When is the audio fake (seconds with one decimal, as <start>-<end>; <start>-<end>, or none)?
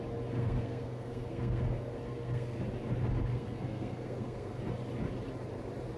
0.4-2.6; 3.3-4.6